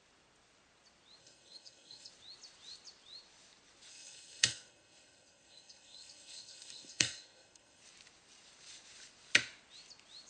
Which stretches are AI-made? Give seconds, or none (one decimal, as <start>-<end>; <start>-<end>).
1.2-2.1; 3.9-7.8